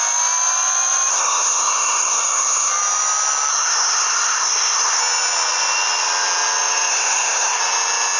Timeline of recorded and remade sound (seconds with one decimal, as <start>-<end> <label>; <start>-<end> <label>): 0.0-1.1 recorded; 1.1-2.7 remade; 2.7-3.5 recorded; 3.5-5.0 remade; 5.0-6.9 recorded; 6.9-7.6 remade; 7.6-8.2 recorded